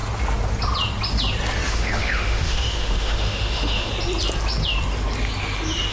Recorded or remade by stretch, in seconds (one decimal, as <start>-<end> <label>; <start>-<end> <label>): 0.0-1.7 recorded; 1.7-3.9 remade; 3.9-5.9 recorded